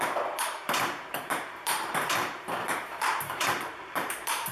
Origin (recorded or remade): remade